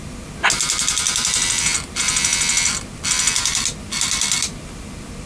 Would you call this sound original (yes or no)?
yes